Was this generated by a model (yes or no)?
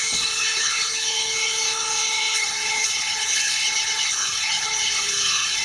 yes